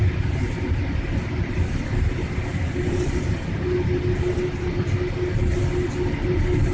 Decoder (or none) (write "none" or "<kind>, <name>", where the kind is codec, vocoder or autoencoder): none